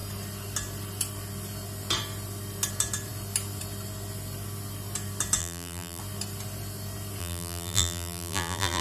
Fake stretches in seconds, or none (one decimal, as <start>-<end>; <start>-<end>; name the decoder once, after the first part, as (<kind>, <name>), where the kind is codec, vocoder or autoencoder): 5.4-6.0 (vocoder, BigVGAN v2); 7.2-8.8